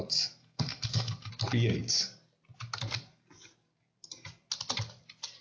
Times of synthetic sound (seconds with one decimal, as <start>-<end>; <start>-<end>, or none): 0.4-1.3